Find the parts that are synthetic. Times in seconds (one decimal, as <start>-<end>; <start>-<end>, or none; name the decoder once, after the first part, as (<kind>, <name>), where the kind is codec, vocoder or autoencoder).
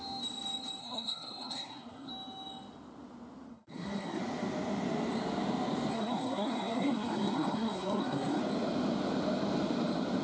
0.8-2.1 (codec, SNAC); 3.5-4.2; 5.9-8.4